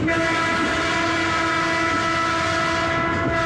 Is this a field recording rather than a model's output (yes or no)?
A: yes